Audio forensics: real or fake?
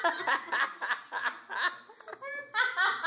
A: real